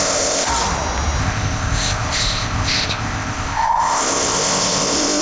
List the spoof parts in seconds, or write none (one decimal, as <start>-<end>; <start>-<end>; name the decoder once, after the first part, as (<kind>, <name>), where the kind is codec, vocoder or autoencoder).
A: 0.0-0.5 (codec, ZipCodec); 1.2-5.2